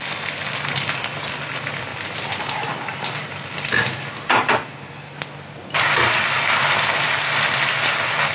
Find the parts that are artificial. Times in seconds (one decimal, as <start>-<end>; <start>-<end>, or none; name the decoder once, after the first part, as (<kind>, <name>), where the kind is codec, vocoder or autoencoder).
none